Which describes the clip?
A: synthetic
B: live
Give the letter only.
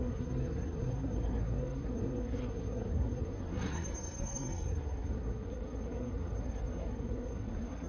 A